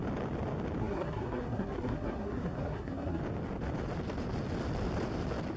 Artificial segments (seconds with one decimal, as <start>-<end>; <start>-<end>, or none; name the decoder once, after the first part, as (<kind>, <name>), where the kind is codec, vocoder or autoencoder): 0.8-3.2 (codec, SNAC)